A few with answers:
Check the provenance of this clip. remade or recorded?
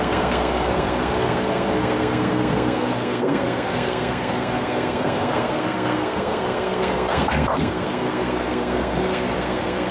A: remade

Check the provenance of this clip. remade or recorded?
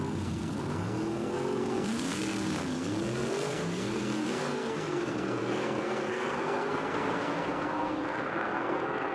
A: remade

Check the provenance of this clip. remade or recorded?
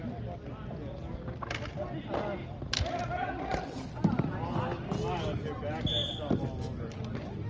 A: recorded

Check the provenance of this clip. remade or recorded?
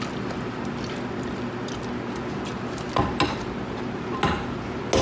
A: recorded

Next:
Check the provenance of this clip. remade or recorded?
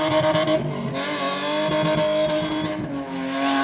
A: recorded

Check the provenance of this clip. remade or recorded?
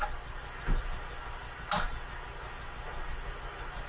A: recorded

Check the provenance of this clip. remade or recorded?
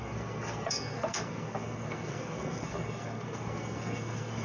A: remade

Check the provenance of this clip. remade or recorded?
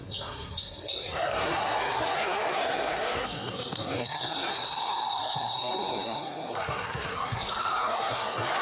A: remade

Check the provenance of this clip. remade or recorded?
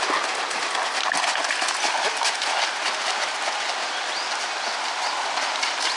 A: recorded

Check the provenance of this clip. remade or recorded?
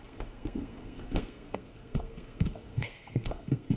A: remade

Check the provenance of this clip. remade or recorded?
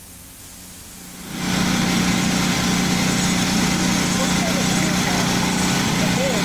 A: recorded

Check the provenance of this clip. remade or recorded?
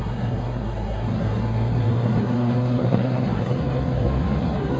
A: remade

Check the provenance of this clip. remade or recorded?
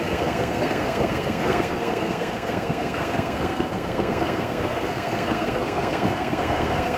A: remade